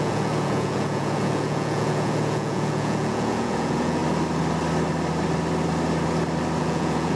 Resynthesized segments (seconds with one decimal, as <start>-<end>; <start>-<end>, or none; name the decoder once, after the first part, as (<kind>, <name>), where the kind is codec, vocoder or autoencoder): 0.0-4.0 (vocoder, Vocos); 6.6-7.2